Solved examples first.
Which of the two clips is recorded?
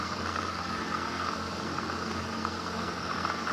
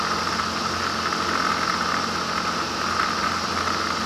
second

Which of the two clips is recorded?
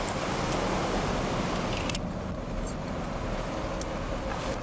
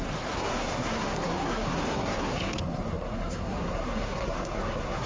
first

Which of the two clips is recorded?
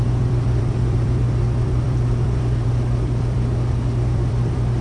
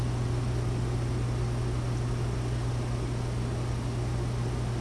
second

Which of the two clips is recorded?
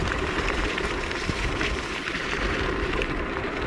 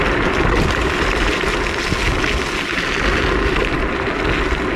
second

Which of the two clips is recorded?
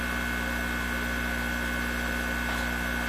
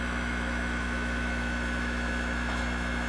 first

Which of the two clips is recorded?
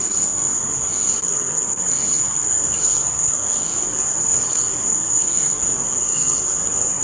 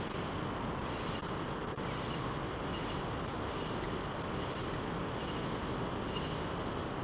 second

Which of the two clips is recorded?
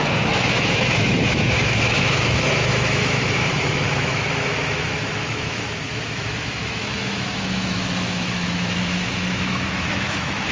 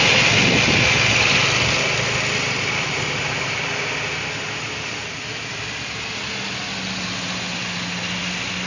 second